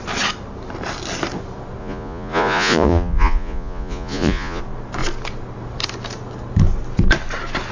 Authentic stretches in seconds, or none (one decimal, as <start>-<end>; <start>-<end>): 0.0-1.8; 4.6-7.7